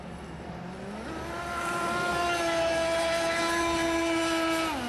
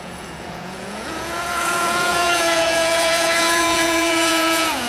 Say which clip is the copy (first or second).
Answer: second